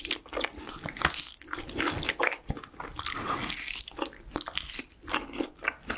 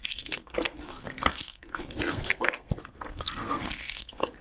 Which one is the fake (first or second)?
second